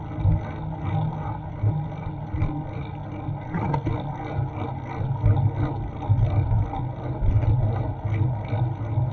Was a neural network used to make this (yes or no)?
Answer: no